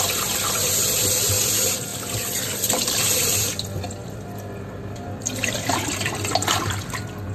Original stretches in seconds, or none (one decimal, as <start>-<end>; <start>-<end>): 0.0-1.9; 2.4-7.3